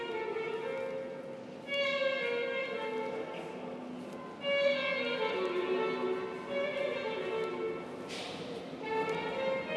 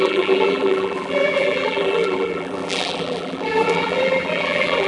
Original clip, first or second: first